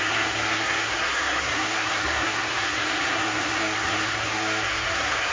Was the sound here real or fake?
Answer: fake